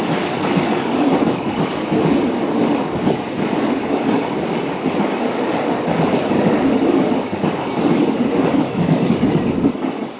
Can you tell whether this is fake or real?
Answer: fake